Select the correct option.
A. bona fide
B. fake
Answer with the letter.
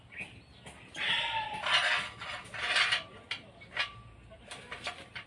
A